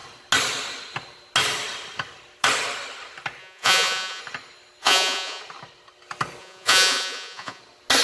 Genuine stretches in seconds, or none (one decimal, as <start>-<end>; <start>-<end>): 0.0-3.4; 4.2-4.8; 5.4-6.4; 7.6-8.0